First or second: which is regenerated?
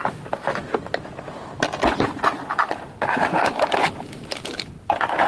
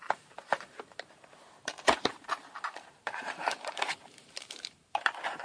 second